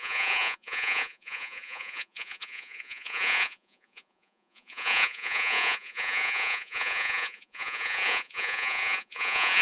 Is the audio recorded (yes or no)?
no